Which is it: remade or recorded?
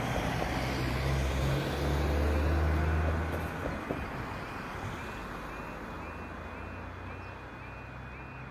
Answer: recorded